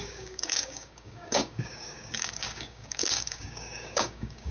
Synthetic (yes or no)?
yes